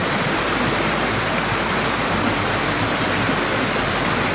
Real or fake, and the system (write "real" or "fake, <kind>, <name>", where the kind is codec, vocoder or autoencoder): real